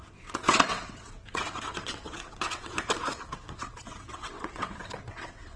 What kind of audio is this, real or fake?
fake